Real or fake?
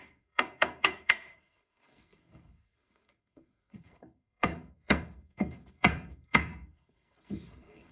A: fake